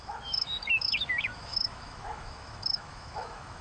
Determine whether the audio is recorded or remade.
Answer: remade